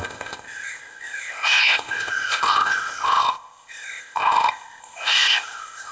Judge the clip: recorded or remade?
remade